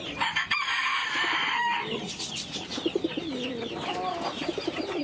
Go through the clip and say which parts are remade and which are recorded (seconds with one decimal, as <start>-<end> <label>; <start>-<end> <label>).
0.0-5.0 remade